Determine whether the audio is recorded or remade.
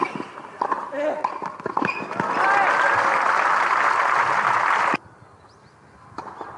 recorded